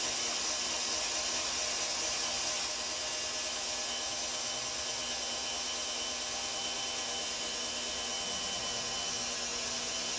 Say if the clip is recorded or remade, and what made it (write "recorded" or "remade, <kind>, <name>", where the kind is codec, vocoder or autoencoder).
recorded